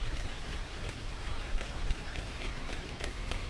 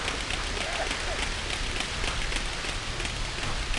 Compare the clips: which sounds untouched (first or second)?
second